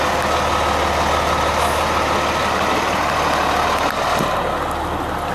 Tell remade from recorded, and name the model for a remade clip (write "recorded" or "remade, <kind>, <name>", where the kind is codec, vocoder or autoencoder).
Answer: recorded